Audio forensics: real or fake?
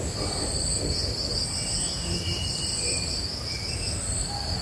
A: real